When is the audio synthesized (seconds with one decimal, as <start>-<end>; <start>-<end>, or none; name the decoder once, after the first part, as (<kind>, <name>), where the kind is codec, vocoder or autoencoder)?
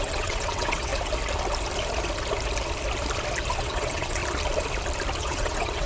0.0-0.9 (vocoder, WaveNeXt); 3.6-4.2; 5.2-5.9